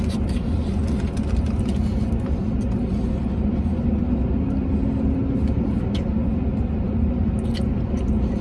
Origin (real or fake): real